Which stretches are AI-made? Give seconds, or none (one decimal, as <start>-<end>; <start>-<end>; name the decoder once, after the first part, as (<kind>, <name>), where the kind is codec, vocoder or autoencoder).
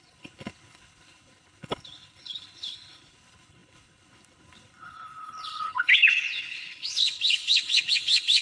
0.0-8.4 (codec, HILCodec)